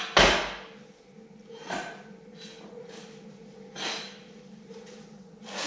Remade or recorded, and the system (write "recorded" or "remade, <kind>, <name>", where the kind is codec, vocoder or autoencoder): recorded